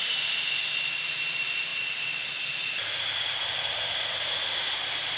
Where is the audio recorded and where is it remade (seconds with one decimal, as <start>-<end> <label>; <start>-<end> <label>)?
0.0-5.2 recorded